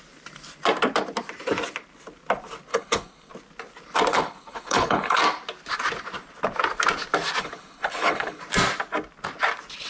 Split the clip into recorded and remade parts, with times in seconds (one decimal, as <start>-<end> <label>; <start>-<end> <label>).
0.0-2.7 recorded; 2.7-3.3 remade; 3.3-4.1 recorded; 4.1-5.2 remade; 5.2-7.4 recorded; 7.4-8.4 remade; 8.4-9.9 recorded